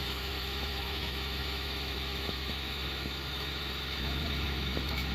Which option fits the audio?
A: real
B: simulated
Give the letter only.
B